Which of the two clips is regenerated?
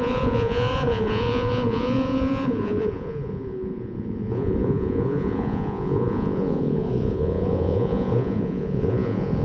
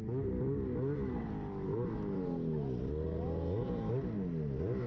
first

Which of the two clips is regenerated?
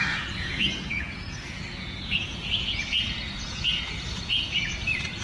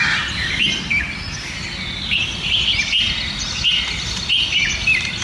first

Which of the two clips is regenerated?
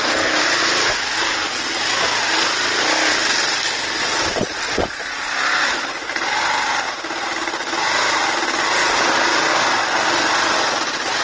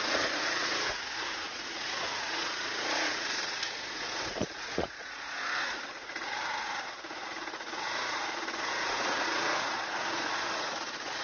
second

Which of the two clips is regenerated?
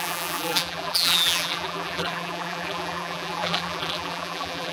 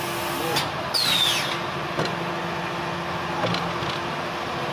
first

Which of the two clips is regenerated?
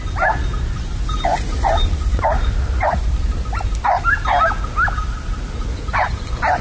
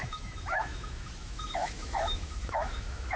second